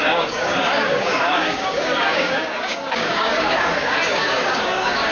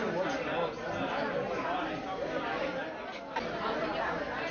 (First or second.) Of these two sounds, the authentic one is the second